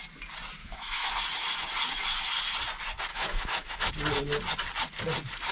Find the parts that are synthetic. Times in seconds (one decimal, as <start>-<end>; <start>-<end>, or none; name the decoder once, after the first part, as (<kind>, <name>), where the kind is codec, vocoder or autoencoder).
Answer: 0.6-1.1 (autoencoder, DAC-VAE); 3.1-3.9